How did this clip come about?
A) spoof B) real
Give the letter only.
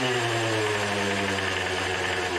B